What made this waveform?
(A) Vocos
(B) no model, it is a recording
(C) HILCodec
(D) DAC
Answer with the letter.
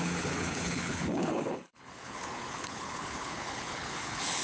C